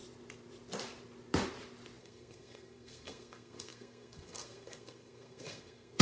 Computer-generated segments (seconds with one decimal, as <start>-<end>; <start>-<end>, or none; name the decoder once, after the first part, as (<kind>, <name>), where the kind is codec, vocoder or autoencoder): 2.0-6.0 (codec, SNAC)